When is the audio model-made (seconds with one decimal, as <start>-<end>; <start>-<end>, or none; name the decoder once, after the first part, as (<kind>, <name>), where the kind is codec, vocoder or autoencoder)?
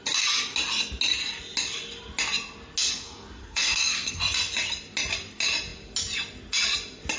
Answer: 3.4-4.2 (codec, SNAC)